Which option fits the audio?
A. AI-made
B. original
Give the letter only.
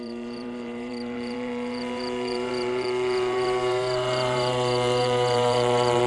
A